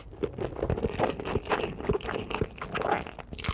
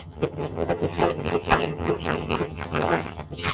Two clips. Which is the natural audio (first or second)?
first